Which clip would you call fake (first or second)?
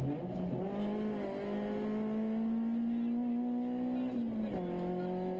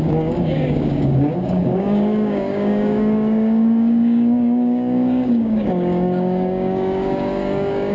second